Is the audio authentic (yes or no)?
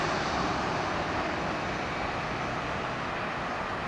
yes